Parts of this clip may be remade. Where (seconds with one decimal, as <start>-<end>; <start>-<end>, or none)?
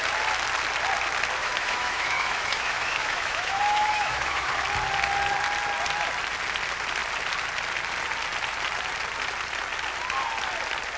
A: 1.4-4.5